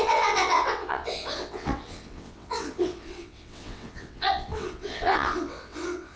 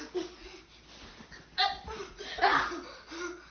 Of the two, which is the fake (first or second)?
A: first